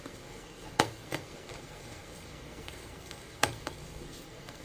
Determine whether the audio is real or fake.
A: fake